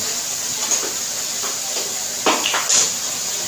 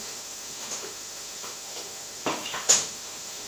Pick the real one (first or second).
first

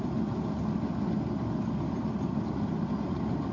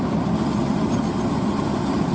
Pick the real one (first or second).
second